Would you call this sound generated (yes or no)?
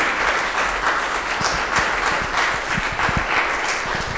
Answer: no